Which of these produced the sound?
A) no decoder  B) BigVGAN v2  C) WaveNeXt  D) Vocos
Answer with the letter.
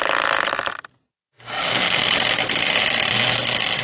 A